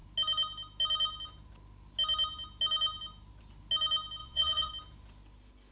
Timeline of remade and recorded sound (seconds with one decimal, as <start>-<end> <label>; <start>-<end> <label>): 0.0-4.2 recorded; 4.2-4.7 remade; 4.7-5.7 recorded